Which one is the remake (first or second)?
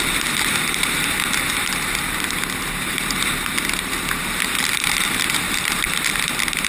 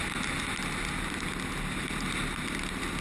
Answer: first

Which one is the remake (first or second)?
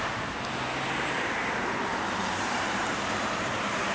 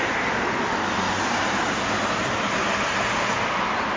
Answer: first